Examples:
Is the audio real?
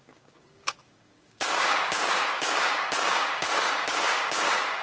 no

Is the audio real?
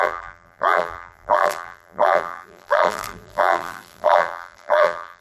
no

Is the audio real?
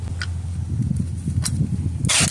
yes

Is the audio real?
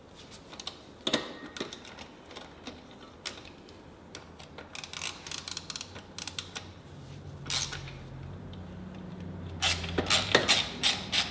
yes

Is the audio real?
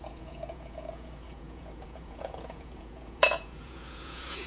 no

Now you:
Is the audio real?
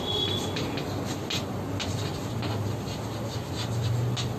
yes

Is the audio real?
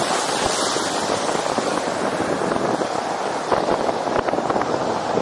yes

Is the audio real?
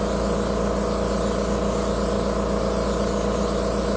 yes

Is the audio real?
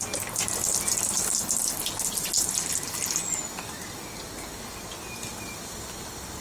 yes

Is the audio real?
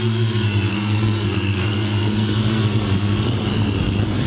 no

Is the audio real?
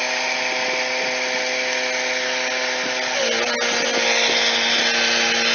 yes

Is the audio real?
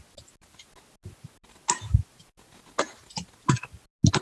yes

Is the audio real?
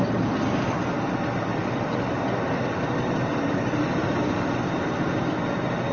yes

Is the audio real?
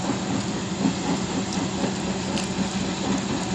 yes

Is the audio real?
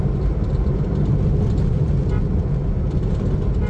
yes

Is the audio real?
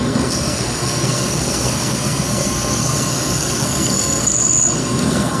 no